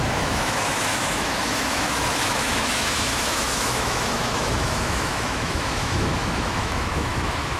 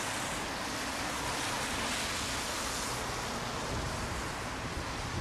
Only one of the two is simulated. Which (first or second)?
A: first